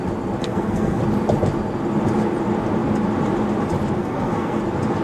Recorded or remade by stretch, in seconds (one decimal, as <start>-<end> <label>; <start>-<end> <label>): 0.0-0.4 recorded; 0.4-1.0 remade; 1.0-4.0 recorded; 4.0-4.6 remade; 4.6-5.0 recorded